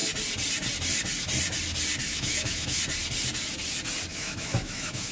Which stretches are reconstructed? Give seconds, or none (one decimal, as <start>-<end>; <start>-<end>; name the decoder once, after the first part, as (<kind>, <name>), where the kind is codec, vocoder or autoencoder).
2.1-2.8 (autoencoder, DAC-VAE); 4.1-5.1